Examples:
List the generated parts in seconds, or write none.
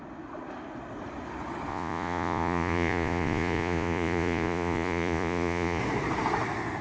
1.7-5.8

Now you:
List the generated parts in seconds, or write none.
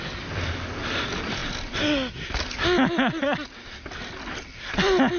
none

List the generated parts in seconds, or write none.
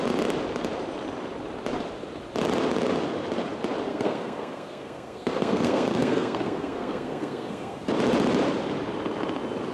3.9-7.9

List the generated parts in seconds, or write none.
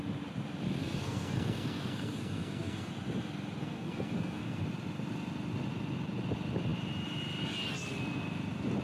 0.8-2.9; 3.6-4.6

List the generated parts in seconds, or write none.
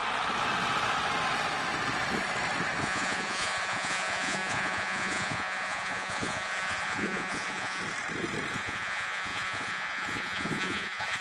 2.8-7.8; 8.5-11.2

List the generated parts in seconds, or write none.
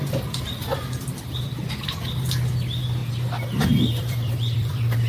0.0-3.0; 4.0-5.1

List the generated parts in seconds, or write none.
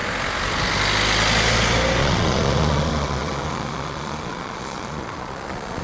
2.0-5.8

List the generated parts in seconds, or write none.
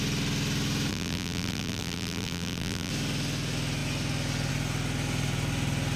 0.9-2.9